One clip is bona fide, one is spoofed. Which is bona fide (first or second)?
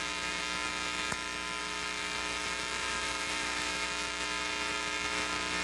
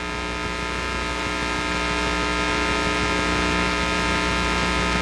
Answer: second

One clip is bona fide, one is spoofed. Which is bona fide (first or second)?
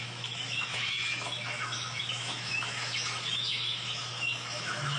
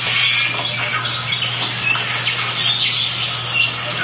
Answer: second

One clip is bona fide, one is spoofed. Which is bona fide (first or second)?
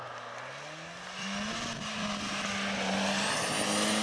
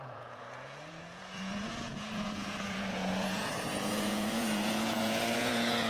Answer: first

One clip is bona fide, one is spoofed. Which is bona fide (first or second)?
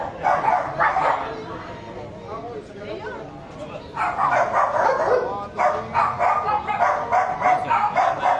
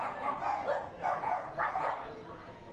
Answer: first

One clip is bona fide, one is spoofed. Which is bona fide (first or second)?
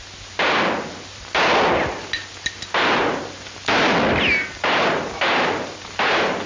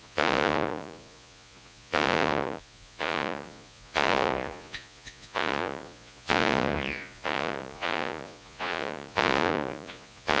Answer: first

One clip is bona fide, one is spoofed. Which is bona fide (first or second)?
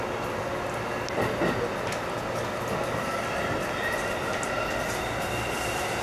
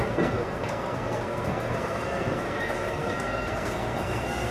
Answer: first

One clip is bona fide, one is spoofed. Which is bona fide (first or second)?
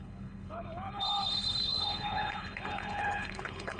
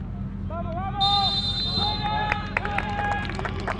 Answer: second